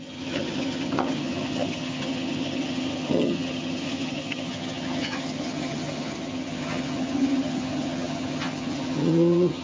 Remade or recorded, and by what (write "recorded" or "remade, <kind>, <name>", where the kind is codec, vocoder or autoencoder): remade, vocoder, HiFi-GAN